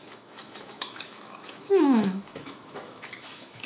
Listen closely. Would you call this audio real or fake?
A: fake